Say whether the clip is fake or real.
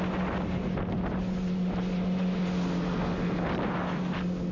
real